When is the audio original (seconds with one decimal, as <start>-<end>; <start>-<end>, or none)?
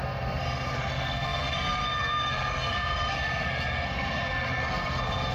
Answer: none